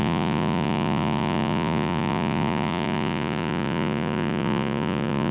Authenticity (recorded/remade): remade